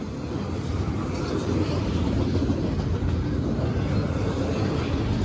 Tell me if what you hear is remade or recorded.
recorded